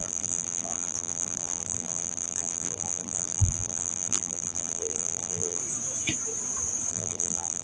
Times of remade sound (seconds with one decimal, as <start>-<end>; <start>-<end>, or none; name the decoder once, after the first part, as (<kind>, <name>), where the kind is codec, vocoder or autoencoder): 0.0-5.6 (vocoder, BigVGAN v2); 6.9-7.6

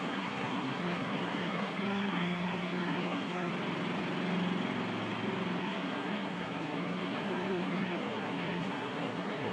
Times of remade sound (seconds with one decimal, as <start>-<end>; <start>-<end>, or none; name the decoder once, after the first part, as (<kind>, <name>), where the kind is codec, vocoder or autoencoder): 0.0-3.5 (codec, SNAC); 5.6-9.5

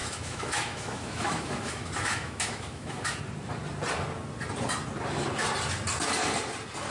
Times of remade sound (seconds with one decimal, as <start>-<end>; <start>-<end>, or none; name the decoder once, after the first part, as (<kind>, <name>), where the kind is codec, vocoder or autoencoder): 0.0-3.2 (autoencoder, DAC-VAE)

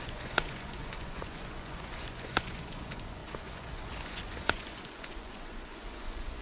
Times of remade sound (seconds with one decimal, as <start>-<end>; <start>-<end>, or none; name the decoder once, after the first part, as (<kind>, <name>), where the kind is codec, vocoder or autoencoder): 0.0-6.4 (vocoder, Vocos)

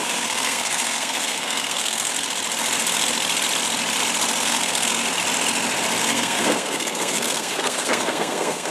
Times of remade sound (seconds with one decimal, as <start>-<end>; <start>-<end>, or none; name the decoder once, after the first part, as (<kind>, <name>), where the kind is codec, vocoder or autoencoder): 0.0-2.1 (codec, SNAC); 4.4-5.0; 6.0-8.7